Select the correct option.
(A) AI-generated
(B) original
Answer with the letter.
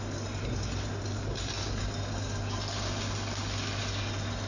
B